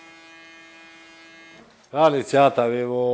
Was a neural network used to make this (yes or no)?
no